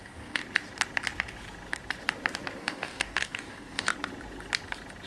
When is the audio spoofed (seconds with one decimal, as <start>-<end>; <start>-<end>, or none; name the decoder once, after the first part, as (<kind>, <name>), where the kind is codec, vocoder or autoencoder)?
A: 0.0-0.4 (codec, DAC); 2.6-3.9